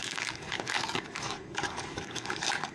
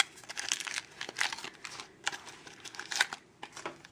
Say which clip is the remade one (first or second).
first